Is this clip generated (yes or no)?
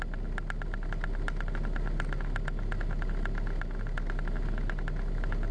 no